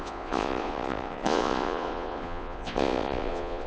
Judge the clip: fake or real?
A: fake